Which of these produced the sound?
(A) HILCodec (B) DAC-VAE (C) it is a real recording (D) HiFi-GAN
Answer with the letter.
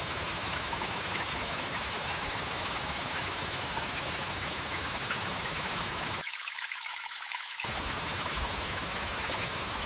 B